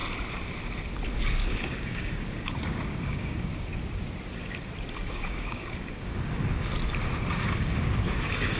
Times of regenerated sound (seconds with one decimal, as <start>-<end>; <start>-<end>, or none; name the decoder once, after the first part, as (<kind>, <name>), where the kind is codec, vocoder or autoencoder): 1.2-3.7 (codec, DAC); 4.9-6.7; 7.3-8.6